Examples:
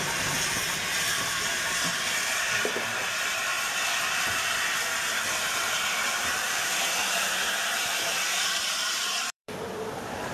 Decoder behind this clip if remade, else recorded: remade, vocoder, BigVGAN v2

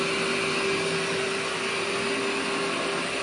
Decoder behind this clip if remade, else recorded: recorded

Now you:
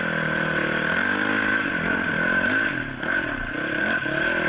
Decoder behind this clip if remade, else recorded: recorded